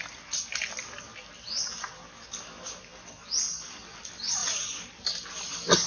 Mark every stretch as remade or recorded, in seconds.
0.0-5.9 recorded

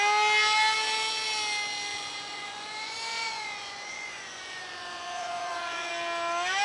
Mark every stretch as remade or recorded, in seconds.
0.0-1.9 recorded; 1.9-5.9 remade; 5.9-6.6 recorded

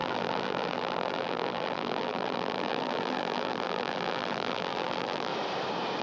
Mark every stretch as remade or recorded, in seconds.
0.0-5.3 remade; 5.3-6.0 recorded

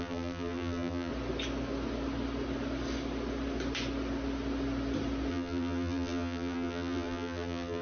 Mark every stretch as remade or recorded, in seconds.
0.0-1.1 remade; 1.1-5.3 recorded; 5.3-7.8 remade

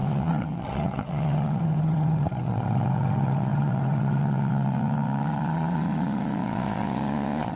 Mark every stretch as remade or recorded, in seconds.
0.0-7.6 remade

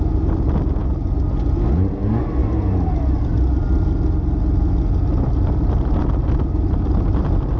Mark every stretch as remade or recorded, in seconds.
0.0-7.6 recorded